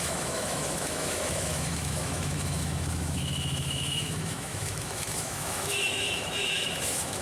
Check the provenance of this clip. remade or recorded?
remade